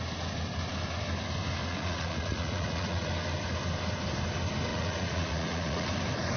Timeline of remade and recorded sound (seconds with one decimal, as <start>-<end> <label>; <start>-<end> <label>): 0.0-1.7 recorded; 1.7-3.1 remade; 3.1-4.7 recorded; 4.7-5.9 remade; 5.9-6.4 recorded